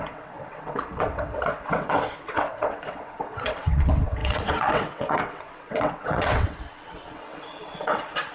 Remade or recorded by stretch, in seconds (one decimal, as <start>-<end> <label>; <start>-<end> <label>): 0.0-8.3 remade